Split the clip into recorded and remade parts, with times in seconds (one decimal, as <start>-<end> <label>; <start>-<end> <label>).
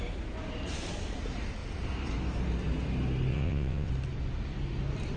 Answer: 0.0-3.3 recorded; 3.3-3.9 remade; 3.9-5.2 recorded